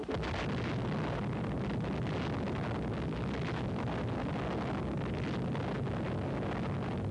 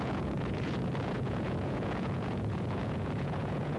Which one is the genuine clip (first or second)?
first